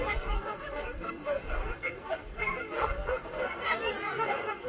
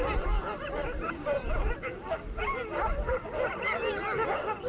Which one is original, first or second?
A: second